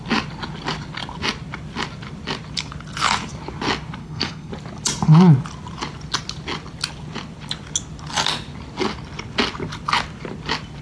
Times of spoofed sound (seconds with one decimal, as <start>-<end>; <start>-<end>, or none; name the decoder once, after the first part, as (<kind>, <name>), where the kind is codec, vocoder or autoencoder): 4.0-4.5 (codec, SNAC)